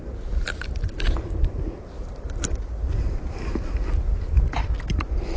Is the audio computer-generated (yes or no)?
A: no